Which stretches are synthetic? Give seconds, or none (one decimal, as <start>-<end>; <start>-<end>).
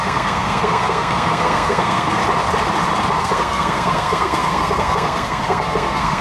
0.0-2.2; 3.2-6.2